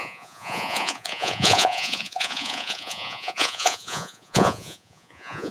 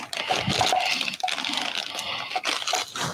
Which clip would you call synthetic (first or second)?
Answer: first